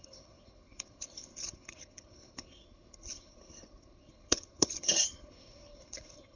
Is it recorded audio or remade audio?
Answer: remade